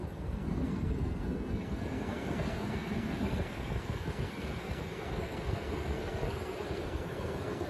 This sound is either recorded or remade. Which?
remade